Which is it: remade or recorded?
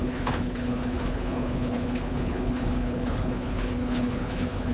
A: remade